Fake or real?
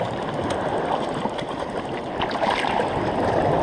real